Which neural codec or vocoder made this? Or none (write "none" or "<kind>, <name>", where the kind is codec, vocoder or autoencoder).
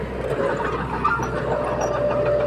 none